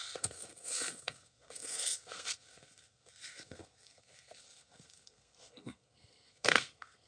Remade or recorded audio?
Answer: remade